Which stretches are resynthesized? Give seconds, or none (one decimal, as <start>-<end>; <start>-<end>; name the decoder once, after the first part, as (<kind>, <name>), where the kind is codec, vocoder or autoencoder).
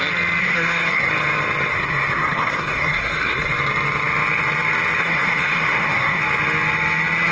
0.4-1.1 (codec, SNAC); 1.7-3.5; 5.0-6.2